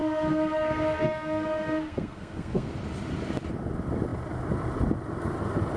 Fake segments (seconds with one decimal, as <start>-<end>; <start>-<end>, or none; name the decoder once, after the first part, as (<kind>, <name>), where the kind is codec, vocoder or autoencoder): 0.0-2.7 (codec, SNAC)